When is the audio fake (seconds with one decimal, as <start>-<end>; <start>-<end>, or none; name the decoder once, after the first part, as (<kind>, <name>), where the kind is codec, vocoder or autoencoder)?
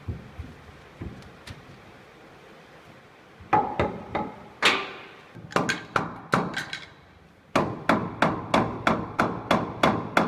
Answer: none